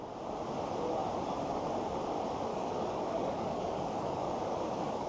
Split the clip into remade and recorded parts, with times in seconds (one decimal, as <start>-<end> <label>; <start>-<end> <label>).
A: 0.0-2.5 recorded; 2.5-5.1 remade